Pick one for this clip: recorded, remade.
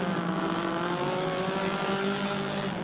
remade